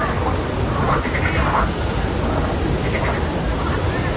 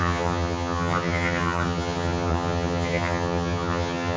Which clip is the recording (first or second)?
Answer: first